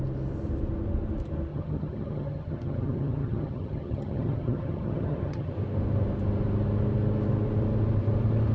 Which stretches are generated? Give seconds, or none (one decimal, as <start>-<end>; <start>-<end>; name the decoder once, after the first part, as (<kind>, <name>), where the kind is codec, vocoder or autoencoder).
1.5-5.5 (vocoder, HiFi-GAN)